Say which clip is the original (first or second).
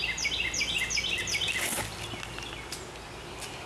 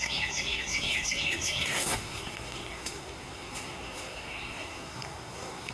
first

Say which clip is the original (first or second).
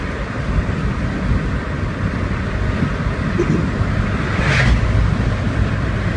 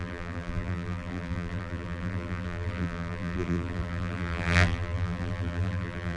first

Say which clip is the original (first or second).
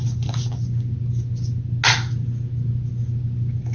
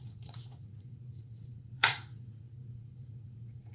first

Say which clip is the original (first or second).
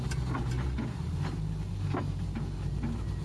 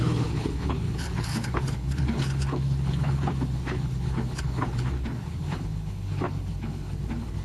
first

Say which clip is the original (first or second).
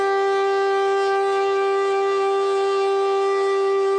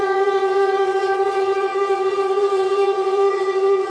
first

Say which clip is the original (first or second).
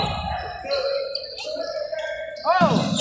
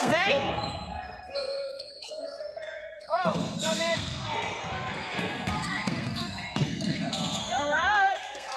first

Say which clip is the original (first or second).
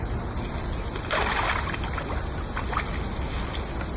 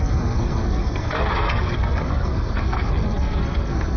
first